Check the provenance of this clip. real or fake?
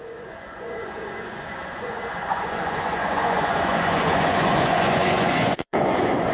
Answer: fake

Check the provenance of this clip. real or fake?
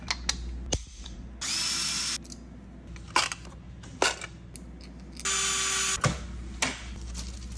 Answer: real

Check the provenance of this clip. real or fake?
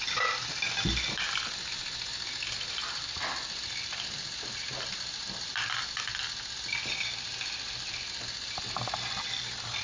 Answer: real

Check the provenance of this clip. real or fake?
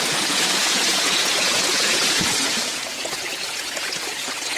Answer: fake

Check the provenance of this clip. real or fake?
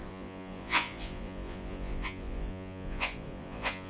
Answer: fake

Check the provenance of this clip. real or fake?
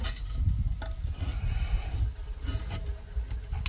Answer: real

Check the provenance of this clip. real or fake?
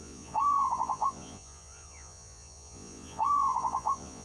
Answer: fake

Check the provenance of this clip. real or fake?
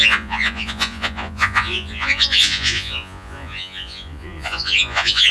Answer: fake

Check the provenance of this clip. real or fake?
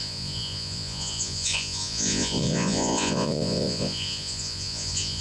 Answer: fake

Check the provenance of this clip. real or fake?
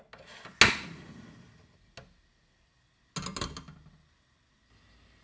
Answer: real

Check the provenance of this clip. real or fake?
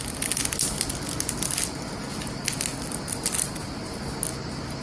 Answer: real